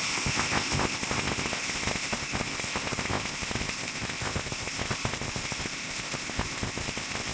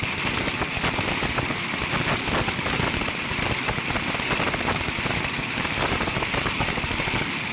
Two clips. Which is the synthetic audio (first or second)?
first